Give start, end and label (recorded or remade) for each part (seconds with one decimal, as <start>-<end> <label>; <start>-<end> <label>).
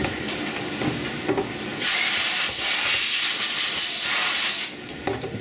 0.0-5.4 recorded